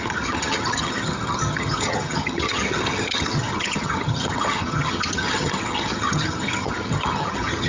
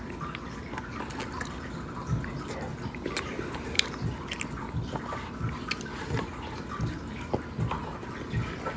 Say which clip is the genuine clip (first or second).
second